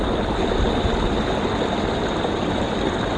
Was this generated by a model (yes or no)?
no